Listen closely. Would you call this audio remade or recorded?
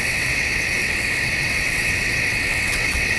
remade